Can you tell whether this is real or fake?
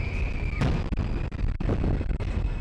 real